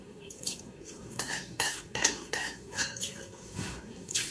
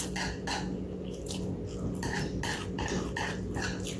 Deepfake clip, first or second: first